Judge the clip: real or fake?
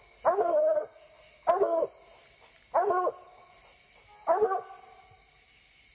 real